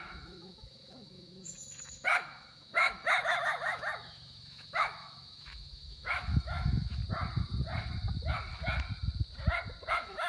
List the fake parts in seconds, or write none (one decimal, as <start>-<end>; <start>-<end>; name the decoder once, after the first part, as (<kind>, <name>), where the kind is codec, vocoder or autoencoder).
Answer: 0.0-7.0 (autoencoder, DAC-VAE); 9.9-10.3

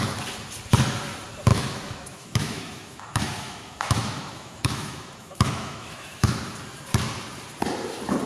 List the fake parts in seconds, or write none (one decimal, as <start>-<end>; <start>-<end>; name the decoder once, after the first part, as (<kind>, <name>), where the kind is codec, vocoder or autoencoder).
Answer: 1.5-6.4 (autoencoder, DAC-VAE)

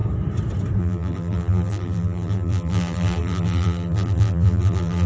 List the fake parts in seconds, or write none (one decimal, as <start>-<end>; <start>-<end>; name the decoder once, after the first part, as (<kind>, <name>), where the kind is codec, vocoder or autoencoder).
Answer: 0.8-5.1 (vocoder, BigVGAN v2)

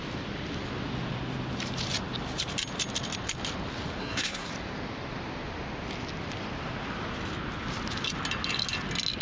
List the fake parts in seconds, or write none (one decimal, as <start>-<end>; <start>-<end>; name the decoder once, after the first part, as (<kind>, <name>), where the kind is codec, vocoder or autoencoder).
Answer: 4.0-4.5 (codec, SNAC)